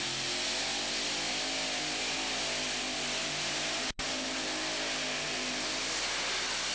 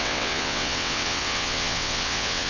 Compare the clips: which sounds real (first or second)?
first